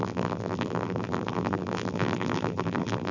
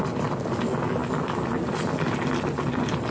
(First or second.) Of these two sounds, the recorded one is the second